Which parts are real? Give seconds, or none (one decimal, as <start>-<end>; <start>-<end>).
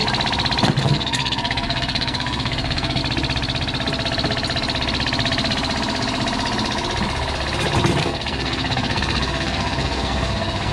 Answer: 0.0-0.8; 3.0-8.0